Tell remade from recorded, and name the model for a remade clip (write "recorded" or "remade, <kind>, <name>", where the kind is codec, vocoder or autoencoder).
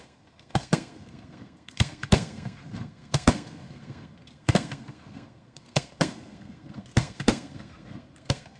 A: remade, codec, SNAC